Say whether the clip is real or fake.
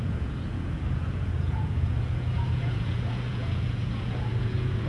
fake